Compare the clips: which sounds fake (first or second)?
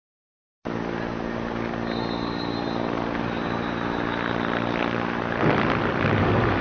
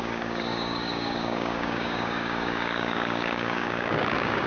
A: second